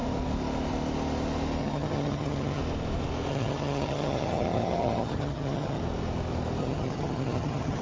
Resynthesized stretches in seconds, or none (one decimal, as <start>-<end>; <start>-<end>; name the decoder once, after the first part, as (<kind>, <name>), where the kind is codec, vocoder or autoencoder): 1.6-2.6 (vocoder, HiFi-GAN); 3.3-5.8; 6.6-7.8